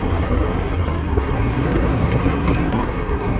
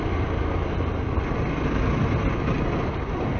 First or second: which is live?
second